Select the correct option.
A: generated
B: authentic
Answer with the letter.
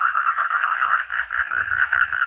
A